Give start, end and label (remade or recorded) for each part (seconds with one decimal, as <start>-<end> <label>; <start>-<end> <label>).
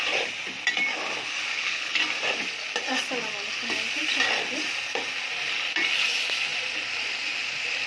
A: 0.0-1.5 recorded; 1.5-2.0 remade; 2.0-7.9 recorded